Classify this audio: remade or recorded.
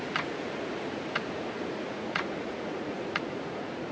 remade